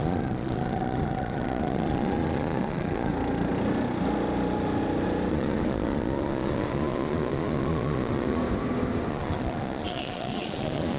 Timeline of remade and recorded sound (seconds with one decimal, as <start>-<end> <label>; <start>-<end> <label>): 0.0-3.1 remade; 3.1-5.3 recorded; 5.3-8.4 remade; 8.4-9.1 recorded; 9.1-11.0 remade